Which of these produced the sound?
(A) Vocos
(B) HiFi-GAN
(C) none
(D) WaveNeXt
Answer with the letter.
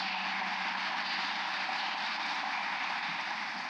C